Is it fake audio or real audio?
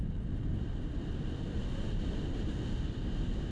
real